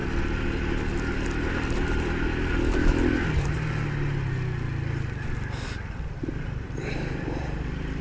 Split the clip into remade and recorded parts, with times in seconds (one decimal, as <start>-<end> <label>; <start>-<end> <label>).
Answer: 0.0-8.0 recorded